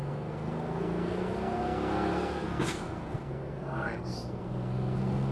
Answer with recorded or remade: remade